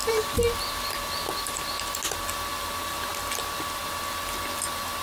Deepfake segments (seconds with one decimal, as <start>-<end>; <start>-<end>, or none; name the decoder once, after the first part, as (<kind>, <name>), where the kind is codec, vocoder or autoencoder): none